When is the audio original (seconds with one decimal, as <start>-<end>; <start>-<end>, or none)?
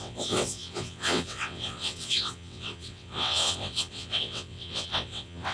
none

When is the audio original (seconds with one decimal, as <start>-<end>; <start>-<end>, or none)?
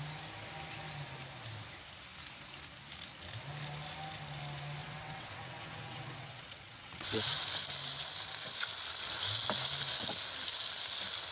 0.0-4.8; 7.4-11.3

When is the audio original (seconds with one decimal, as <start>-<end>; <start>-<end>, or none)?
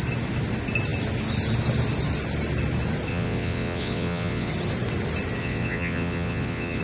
0.0-3.1; 4.5-5.4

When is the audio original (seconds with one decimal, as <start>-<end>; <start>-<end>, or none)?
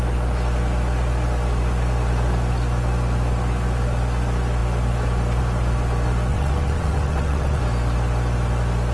0.0-6.3; 7.6-8.9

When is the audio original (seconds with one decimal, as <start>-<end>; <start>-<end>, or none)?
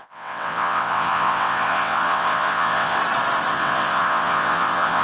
3.0-3.5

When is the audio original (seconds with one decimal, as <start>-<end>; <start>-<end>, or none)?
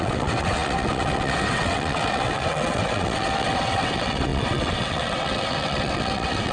none